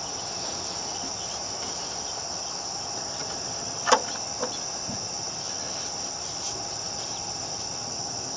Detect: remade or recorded recorded